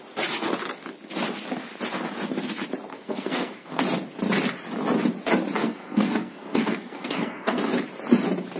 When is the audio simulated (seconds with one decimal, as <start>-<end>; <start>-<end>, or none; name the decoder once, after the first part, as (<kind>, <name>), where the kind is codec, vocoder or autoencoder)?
2.9-3.8 (codec, SNAC); 5.6-7.6